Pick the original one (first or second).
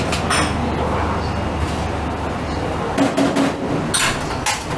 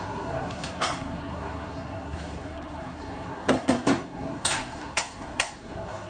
first